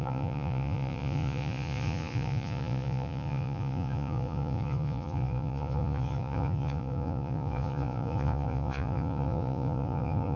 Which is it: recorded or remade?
remade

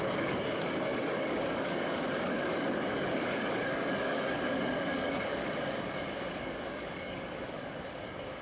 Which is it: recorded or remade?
remade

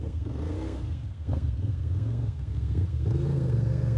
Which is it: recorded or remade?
remade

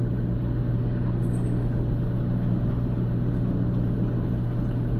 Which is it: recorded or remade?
recorded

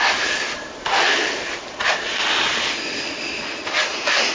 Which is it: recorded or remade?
recorded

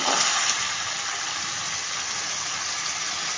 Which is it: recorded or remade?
recorded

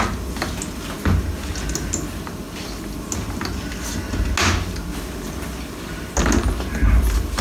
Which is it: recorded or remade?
recorded